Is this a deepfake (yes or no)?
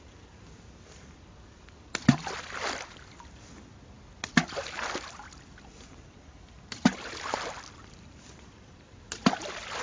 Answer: no